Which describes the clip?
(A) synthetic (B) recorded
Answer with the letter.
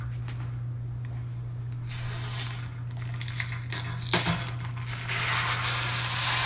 B